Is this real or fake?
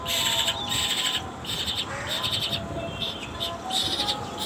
real